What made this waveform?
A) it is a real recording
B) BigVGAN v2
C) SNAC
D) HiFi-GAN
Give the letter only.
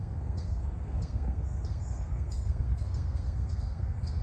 C